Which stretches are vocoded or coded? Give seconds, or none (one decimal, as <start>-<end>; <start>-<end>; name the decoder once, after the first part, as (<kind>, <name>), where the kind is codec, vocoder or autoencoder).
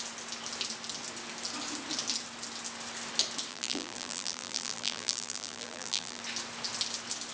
3.5-6.2 (vocoder, BigVGAN v2)